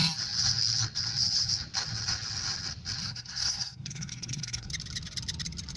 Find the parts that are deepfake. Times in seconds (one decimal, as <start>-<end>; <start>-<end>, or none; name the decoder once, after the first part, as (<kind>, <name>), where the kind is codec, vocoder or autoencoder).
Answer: 3.0-4.7 (codec, SNAC)